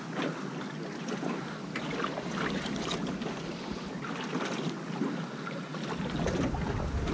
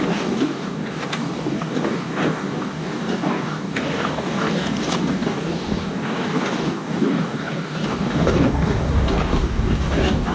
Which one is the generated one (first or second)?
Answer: second